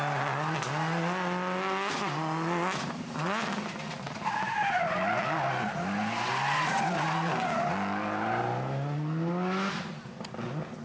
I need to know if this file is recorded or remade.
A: recorded